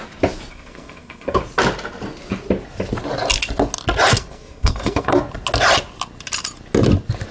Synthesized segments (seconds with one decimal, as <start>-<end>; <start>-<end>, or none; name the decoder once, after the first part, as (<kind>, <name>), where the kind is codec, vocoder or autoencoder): 0.5-1.4 (codec, SNAC); 4.1-5.2